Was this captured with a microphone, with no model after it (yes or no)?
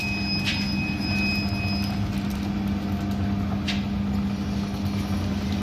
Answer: yes